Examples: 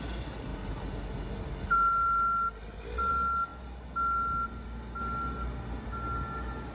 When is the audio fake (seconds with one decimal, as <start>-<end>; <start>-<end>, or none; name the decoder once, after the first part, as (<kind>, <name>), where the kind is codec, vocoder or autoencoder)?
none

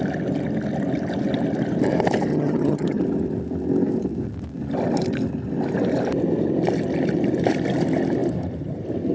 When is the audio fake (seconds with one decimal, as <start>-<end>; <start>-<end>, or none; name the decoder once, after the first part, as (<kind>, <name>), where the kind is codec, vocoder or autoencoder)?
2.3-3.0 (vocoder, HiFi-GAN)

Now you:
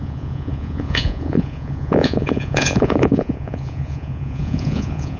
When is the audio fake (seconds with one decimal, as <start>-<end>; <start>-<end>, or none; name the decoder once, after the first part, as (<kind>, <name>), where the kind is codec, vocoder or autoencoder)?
0.0-5.2 (vocoder, Vocos)

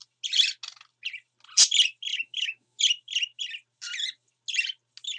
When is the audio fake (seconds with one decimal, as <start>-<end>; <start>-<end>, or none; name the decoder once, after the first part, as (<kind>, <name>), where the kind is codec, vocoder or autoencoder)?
2.1-2.8 (autoencoder, DAC-VAE)

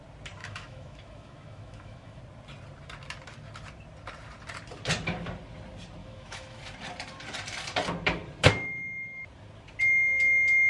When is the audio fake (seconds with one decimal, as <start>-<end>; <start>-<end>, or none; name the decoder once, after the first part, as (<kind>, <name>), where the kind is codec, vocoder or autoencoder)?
0.4-2.2 (autoencoder, DAC-VAE); 6.0-6.6